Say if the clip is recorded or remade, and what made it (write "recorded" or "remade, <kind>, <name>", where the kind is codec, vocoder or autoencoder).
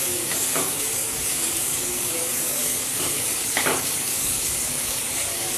remade, codec, DAC